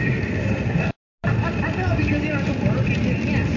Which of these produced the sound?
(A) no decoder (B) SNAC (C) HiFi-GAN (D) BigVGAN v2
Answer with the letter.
A